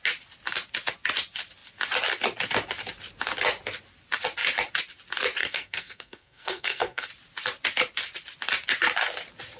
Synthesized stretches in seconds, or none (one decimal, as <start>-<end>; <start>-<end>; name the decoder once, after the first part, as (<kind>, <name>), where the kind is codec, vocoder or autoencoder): 5.4-7.1 (codec, SNAC)